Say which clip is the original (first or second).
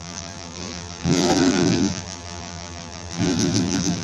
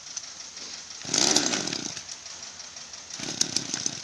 second